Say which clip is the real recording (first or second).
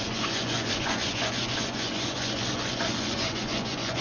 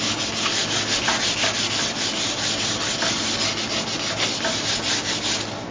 second